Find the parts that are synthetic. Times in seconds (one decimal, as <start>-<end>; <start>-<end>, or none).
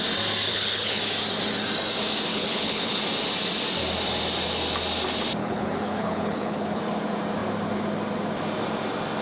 0.5-1.0; 2.3-3.0; 5.4-6.8